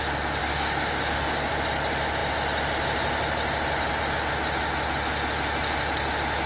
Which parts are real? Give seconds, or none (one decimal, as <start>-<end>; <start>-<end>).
0.0-0.4; 1.5-6.5